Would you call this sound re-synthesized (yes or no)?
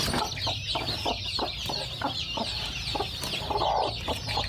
no